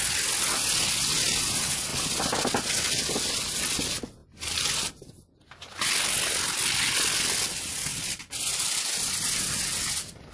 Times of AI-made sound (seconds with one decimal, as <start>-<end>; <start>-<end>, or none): 1.9-2.5; 7.9-9.6